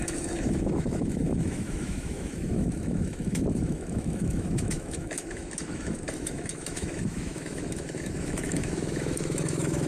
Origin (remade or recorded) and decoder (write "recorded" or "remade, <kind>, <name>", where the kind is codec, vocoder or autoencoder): remade, autoencoder, DAC-VAE